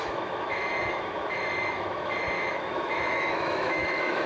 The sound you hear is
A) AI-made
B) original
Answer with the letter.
A